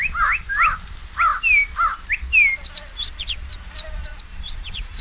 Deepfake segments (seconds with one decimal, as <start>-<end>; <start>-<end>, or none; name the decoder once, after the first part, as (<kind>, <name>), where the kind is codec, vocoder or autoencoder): 4.3-5.0 (vocoder, Vocos)